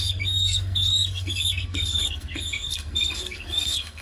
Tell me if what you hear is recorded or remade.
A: remade